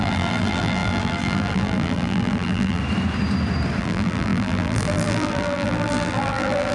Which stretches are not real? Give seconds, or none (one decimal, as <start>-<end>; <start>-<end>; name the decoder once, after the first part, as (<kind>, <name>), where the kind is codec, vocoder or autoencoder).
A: 0.0-2.8 (vocoder, BigVGAN v2); 3.8-6.7